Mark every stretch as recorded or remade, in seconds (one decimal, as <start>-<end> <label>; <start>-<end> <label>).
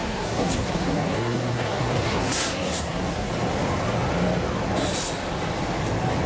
0.0-3.3 remade; 3.3-6.3 recorded